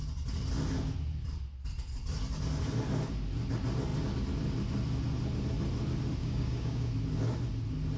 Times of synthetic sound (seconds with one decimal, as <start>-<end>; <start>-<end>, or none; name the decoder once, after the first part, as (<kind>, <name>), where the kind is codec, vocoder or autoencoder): 6.2-6.9 (codec, DAC)